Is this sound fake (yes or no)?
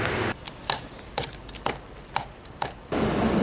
no